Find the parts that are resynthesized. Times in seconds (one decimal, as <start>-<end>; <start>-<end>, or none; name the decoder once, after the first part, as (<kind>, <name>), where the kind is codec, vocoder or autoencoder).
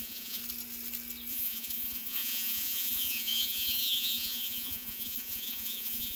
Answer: 0.0-0.4 (vocoder, Vocos); 1.3-6.2